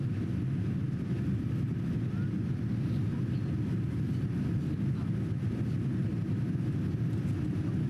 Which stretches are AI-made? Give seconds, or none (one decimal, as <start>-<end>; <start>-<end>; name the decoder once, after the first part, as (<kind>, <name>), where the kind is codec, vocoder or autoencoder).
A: none